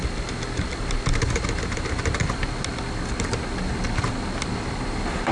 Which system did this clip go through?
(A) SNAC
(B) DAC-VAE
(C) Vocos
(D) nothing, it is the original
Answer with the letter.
D